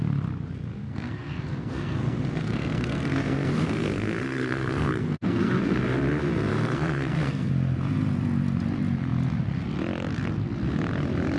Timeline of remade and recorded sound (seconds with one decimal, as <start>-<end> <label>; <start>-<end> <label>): 0.0-0.8 recorded; 0.8-5.8 remade; 5.8-6.5 recorded; 6.5-7.5 remade; 7.5-11.4 recorded